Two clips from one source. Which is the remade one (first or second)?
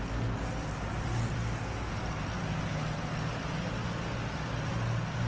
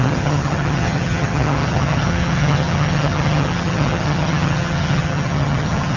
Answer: second